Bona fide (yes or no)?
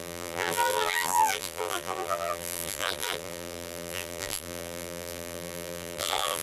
no